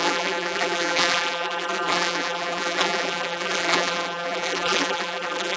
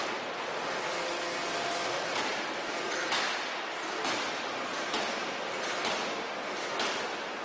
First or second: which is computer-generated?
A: first